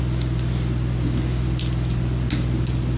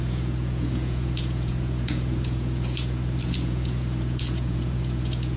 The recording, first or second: first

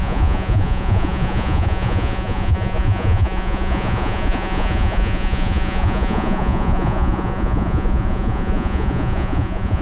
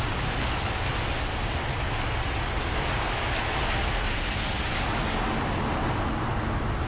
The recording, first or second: second